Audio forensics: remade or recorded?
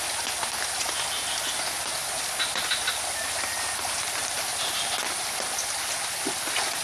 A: recorded